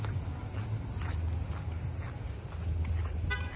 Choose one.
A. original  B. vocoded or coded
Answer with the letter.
A